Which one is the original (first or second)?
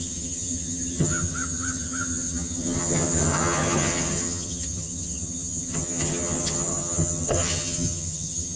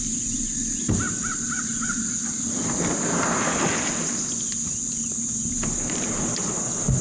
second